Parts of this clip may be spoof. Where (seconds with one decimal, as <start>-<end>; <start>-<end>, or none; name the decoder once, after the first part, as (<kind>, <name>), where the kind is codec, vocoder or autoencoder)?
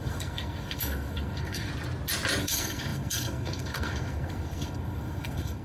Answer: 0.0-1.7 (codec, SNAC); 2.4-5.6